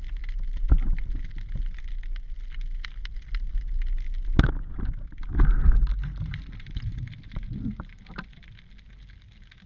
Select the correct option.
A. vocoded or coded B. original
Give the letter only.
B